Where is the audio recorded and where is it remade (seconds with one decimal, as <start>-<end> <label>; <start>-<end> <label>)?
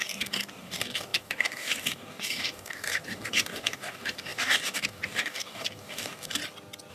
0.0-6.4 remade; 6.4-6.9 recorded